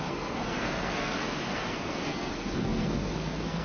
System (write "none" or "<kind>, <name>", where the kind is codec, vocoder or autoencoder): codec, SNAC